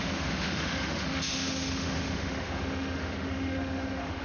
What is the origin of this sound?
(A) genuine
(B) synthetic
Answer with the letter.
B